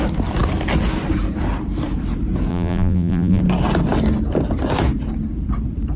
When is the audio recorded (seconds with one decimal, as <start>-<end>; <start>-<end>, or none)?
0.0-2.5; 3.4-6.0